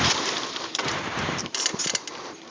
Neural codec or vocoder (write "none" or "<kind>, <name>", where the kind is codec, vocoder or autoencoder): vocoder, BigVGAN v2